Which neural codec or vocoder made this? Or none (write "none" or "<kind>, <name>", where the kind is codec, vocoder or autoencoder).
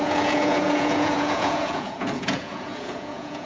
vocoder, Vocos